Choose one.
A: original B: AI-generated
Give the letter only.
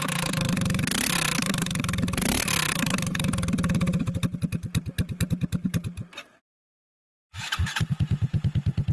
B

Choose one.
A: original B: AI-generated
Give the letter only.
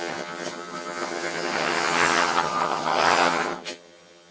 B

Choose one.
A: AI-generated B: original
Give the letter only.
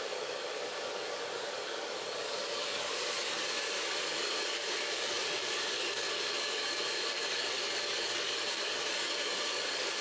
A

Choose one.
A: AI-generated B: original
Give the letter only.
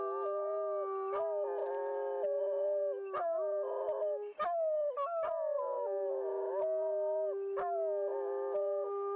B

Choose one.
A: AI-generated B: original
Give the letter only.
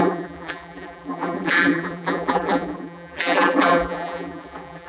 A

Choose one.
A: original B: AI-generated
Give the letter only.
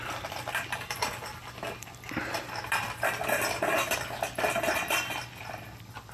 B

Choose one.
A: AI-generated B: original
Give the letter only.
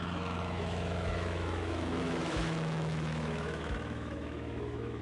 A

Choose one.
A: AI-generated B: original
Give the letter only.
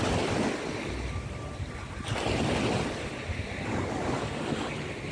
B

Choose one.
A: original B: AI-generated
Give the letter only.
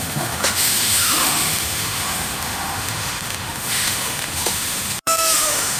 B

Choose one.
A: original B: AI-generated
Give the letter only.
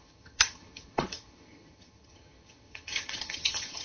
B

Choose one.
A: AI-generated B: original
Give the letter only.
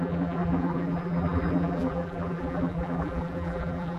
A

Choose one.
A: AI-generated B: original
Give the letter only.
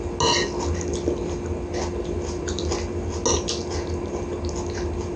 B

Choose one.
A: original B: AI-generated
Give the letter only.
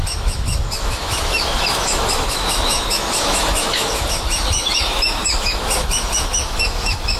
B